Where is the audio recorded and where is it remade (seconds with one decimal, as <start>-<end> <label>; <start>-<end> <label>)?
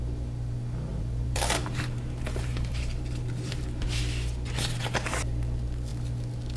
0.0-0.9 recorded; 0.9-4.0 remade; 4.0-6.6 recorded